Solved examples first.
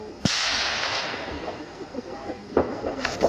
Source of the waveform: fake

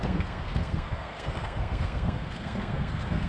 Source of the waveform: fake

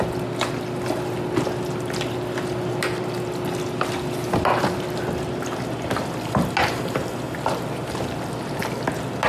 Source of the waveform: real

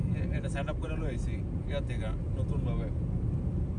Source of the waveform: real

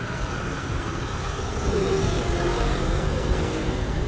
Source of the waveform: fake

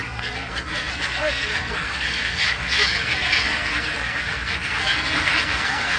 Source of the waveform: fake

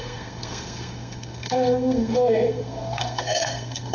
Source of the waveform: fake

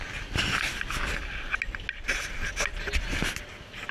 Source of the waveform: real